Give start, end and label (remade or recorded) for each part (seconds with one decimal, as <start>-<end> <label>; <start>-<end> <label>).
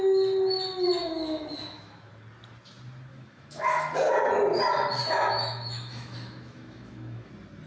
0.0-1.0 recorded; 1.0-2.1 remade; 2.1-3.1 recorded; 3.1-3.9 remade; 3.9-5.0 recorded; 5.0-7.3 remade; 7.3-7.7 recorded